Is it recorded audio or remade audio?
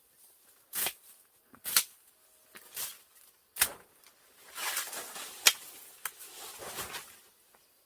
recorded